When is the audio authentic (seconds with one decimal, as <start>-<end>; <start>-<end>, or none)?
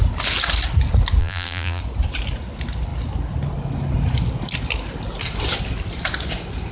0.0-1.2; 1.8-6.7